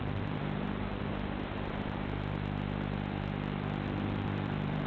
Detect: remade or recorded remade